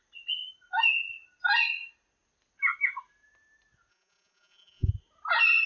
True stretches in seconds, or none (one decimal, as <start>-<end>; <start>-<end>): 0.0-3.9; 4.9-5.7